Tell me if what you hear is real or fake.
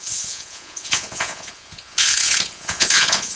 fake